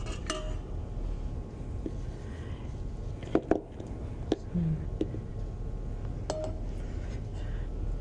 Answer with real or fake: real